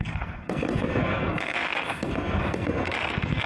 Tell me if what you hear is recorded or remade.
remade